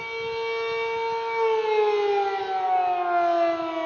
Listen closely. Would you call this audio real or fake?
real